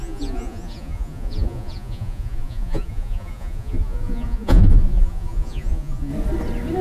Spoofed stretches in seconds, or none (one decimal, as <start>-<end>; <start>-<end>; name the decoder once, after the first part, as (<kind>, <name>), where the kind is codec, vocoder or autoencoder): 0.0-6.1 (vocoder, Vocos)